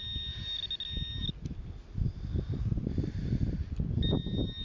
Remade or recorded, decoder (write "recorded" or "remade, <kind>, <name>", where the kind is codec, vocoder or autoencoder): recorded